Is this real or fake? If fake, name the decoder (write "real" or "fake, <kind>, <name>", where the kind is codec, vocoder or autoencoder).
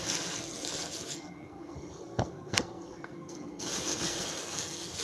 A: fake, codec, SNAC